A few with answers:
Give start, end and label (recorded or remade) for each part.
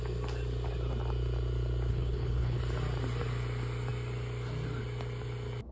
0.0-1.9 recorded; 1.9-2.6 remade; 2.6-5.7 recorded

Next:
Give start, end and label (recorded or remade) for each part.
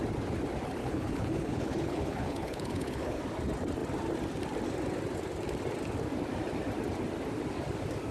0.0-0.8 recorded; 0.8-3.2 remade; 3.2-8.1 recorded